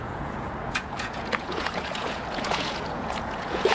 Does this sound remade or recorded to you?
remade